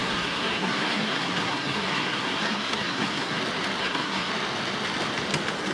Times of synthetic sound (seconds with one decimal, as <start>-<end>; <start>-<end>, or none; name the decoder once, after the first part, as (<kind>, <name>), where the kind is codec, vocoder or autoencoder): 0.0-3.4 (codec, SNAC); 3.8-4.3